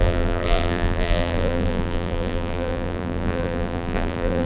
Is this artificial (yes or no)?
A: yes